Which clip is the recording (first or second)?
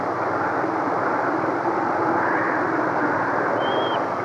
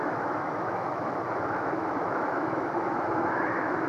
first